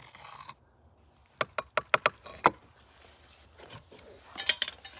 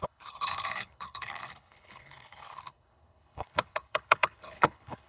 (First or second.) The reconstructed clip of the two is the second